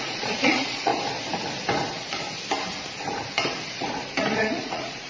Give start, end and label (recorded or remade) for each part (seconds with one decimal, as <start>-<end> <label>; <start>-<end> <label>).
0.0-0.9 remade; 0.9-3.7 recorded; 3.7-5.1 remade